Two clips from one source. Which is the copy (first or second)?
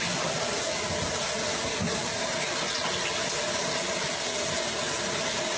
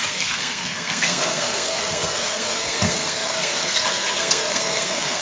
second